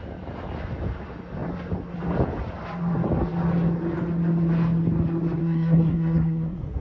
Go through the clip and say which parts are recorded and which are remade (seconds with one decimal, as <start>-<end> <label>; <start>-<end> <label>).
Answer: 0.0-5.4 recorded; 5.4-6.8 remade